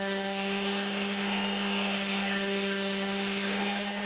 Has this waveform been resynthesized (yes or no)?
yes